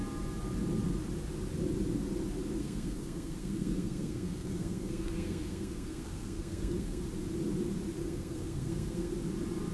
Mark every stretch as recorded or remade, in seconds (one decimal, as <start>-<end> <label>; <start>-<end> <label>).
0.0-2.6 recorded; 2.6-7.0 remade; 7.0-8.0 recorded; 8.0-9.1 remade; 9.1-9.7 recorded